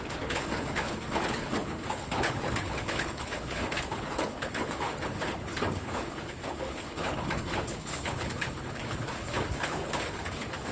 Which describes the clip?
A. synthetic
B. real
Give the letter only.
A